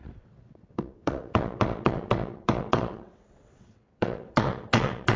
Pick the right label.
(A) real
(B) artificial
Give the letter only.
B